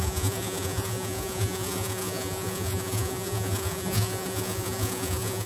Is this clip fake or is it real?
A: fake